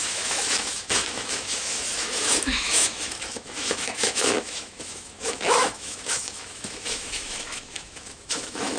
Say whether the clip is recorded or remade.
remade